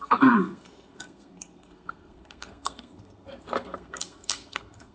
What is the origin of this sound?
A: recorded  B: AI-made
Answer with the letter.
B